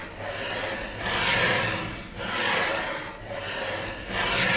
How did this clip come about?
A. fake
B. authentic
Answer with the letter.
B